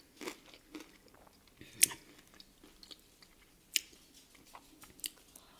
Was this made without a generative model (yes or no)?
yes